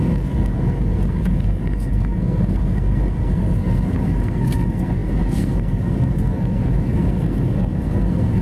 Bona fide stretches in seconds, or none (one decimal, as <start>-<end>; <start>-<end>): none